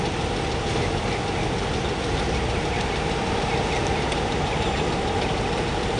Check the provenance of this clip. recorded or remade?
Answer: recorded